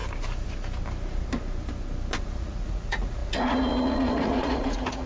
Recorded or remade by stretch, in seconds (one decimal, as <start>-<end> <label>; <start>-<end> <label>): 0.0-2.2 recorded; 2.2-5.1 remade